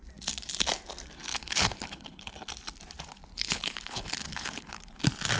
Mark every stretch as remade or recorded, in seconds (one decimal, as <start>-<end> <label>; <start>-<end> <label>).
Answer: 0.0-1.3 recorded; 1.3-2.3 remade; 2.3-3.3 recorded; 3.3-5.0 remade; 5.0-5.4 recorded